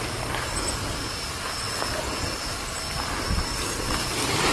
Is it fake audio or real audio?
real